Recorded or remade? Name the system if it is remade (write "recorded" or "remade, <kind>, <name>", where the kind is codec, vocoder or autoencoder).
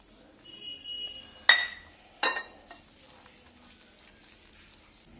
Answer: recorded